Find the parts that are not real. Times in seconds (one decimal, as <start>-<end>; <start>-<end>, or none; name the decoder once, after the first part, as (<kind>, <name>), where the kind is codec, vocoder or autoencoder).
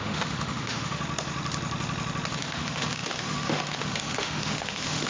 0.0-1.0 (autoencoder, DAC-VAE); 2.3-5.1